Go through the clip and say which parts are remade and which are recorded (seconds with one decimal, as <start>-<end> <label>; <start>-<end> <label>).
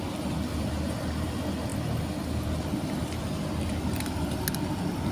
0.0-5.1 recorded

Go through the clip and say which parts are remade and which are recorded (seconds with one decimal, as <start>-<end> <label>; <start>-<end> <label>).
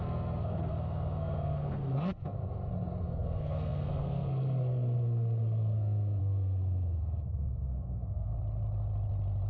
0.0-2.4 remade; 2.4-3.0 recorded; 3.0-8.3 remade; 8.3-9.5 recorded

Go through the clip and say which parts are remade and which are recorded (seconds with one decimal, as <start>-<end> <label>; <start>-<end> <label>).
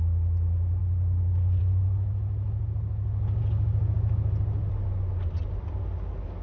0.0-6.4 recorded